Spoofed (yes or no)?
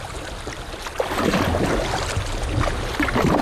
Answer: no